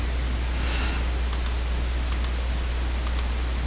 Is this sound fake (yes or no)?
no